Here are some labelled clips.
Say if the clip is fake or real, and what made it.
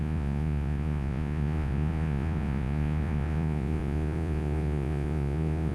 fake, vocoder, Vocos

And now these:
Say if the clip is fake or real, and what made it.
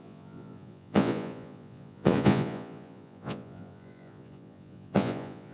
fake, vocoder, Vocos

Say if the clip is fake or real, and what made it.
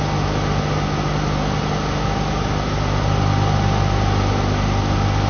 real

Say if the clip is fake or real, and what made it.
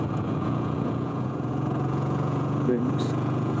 fake, vocoder, Vocos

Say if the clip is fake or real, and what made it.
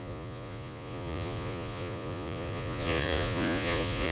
fake, vocoder, Vocos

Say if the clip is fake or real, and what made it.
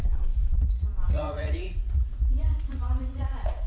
fake, vocoder, Vocos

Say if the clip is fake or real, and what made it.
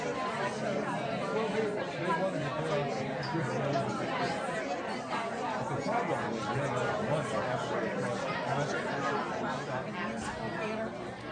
real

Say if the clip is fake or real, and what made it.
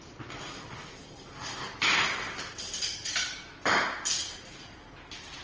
real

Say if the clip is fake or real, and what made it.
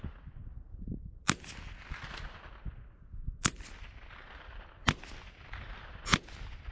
real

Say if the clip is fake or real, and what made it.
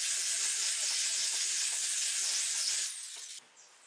real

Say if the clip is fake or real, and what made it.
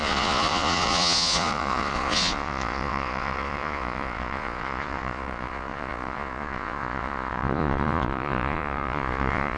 fake, vocoder, Vocos